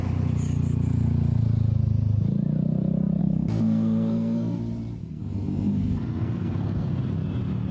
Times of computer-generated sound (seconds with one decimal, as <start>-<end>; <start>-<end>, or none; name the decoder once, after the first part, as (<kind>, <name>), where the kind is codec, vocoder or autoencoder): 3.2-4.6 (codec, SNAC); 5.0-7.0